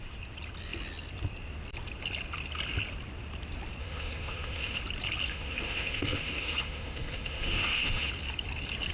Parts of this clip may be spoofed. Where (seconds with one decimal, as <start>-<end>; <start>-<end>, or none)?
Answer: 3.8-4.8; 5.3-8.1